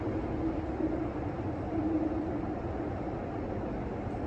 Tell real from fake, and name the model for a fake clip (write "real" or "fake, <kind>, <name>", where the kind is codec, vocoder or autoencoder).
real